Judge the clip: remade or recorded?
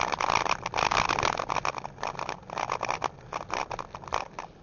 recorded